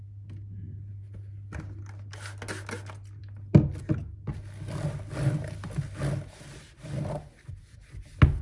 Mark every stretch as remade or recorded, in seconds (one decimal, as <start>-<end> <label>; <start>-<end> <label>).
0.0-8.4 recorded